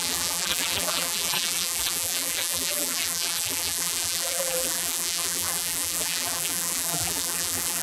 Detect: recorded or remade remade